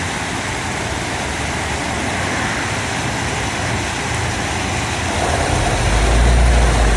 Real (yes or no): yes